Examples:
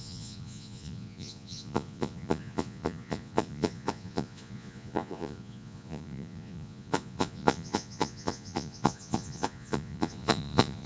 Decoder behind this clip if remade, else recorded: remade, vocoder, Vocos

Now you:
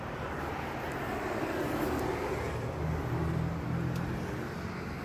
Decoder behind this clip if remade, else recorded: recorded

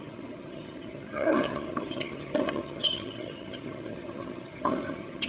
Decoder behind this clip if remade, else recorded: remade, vocoder, HiFi-GAN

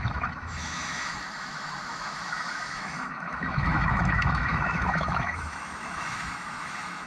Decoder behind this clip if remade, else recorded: remade, autoencoder, DAC-VAE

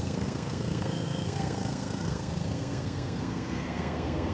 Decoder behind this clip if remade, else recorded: remade, codec, SNAC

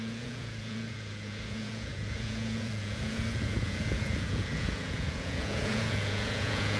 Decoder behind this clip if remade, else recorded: remade, vocoder, Vocos